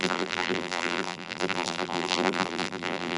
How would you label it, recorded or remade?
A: remade